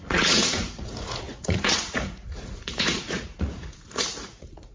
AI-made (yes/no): yes